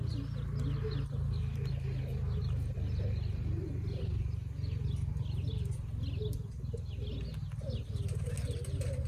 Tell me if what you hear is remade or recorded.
recorded